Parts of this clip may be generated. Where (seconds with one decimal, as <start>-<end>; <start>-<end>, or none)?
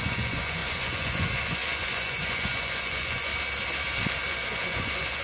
0.0-3.3; 4.3-5.2